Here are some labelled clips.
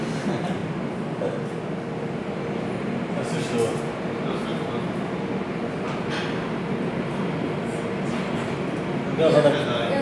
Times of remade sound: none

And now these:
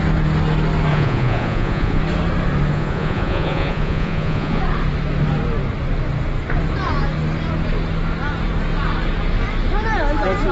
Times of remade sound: 0.9-2.0 (vocoder, Vocos); 2.7-4.6

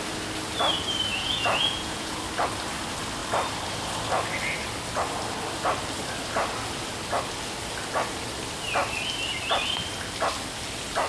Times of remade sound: 1.1-2.2 (vocoder, Vocos)

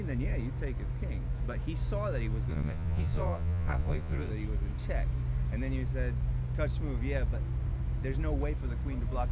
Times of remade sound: 2.5-4.3 (vocoder, Vocos)

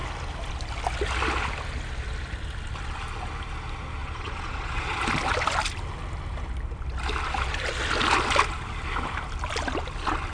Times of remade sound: 4.0-5.0 (vocoder, Vocos)

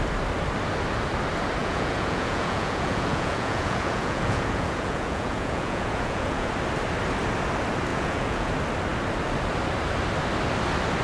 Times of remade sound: 1.6-6.5 (vocoder, Vocos); 7.9-8.5

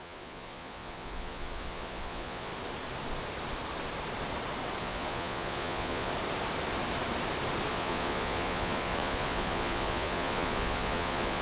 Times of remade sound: 0.0-2.5 (vocoder, Vocos); 4.8-6.1; 7.7-11.4